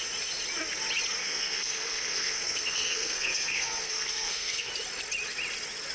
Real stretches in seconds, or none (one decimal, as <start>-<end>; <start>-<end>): 0.0-1.2; 4.7-5.9